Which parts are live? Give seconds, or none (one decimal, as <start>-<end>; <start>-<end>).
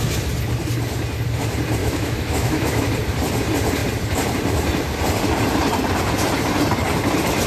0.0-1.8; 2.8-7.5